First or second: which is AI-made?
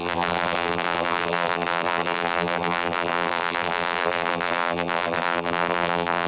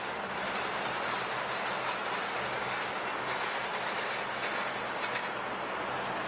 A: first